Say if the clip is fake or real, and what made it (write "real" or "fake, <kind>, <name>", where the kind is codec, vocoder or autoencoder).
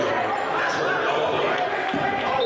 real